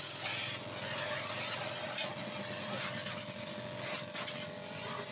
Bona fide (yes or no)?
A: yes